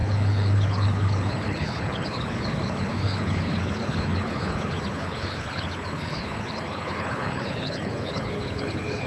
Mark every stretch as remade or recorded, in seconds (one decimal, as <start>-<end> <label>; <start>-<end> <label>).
0.0-9.1 remade